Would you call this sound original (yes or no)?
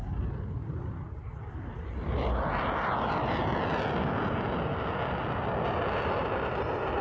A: yes